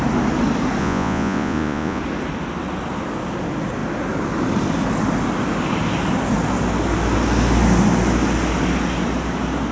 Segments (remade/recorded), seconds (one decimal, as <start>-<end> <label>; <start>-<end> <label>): 0.0-0.8 recorded; 0.8-2.0 remade; 2.0-9.7 recorded